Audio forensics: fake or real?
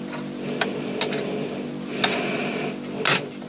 real